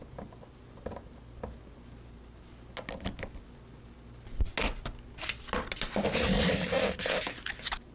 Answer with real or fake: real